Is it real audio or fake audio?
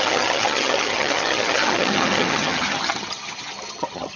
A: fake